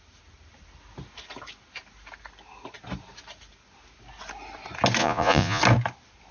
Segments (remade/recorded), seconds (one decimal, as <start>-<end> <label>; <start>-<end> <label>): 0.0-5.0 recorded; 5.0-5.6 remade; 5.6-6.3 recorded